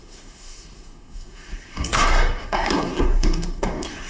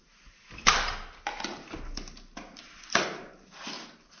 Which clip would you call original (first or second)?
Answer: second